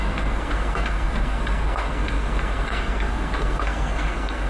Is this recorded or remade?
remade